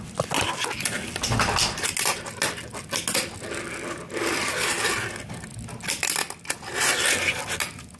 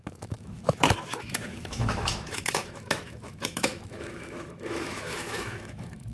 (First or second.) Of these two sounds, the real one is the first